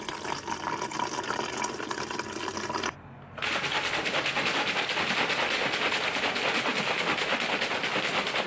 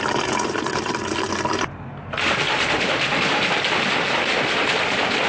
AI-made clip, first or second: second